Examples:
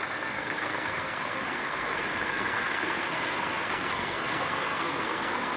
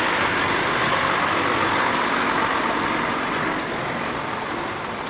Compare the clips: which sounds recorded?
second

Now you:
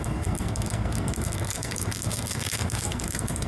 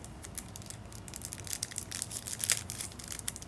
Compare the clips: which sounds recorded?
second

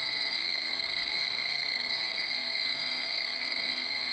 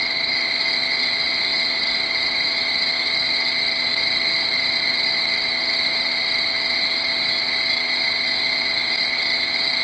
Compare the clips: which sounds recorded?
second